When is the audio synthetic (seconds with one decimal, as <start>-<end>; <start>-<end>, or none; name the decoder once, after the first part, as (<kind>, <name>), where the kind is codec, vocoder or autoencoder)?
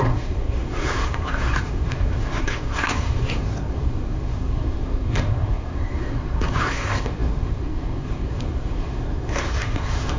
0.0-10.2 (codec, SNAC)